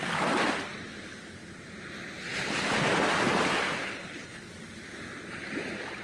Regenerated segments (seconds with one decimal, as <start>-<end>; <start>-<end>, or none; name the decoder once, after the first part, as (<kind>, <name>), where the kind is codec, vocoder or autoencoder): 3.8-4.5 (codec, HILCodec)